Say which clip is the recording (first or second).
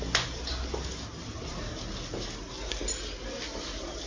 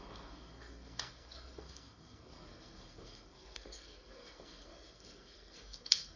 first